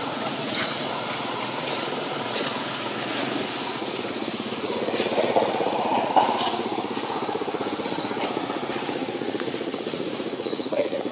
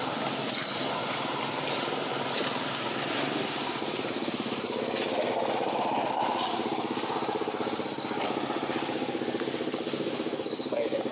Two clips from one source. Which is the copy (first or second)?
first